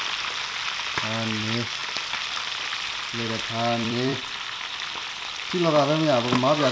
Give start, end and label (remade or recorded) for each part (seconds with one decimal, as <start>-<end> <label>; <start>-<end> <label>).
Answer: 0.0-1.8 recorded; 1.8-5.1 remade; 5.1-6.7 recorded

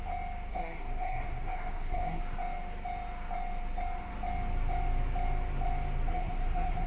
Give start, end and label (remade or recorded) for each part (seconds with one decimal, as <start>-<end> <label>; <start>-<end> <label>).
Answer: 0.0-0.5 recorded; 0.5-2.2 remade; 2.2-6.1 recorded; 6.1-6.9 remade

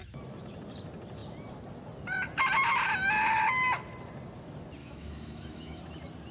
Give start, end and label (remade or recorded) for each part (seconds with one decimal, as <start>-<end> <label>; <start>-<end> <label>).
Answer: 0.0-4.8 recorded; 4.8-5.8 remade; 5.8-6.3 recorded

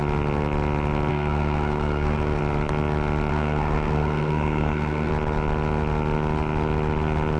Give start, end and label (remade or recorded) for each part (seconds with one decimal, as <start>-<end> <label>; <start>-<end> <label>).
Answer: 0.0-1.1 recorded; 1.1-2.4 remade; 2.4-3.3 recorded; 3.3-5.1 remade; 5.1-7.4 recorded

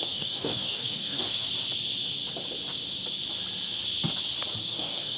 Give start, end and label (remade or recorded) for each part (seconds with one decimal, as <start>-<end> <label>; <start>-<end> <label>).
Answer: 0.0-1.5 remade; 1.5-4.6 recorded; 4.6-5.2 remade

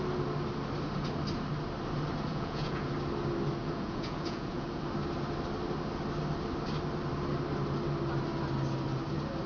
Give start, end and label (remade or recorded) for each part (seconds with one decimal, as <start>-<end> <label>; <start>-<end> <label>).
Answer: 0.0-2.3 recorded; 2.3-2.9 remade; 2.9-3.6 recorded; 3.6-4.8 remade; 4.8-9.5 recorded